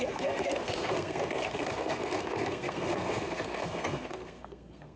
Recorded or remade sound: remade